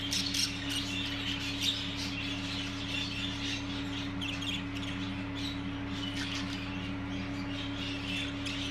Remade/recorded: recorded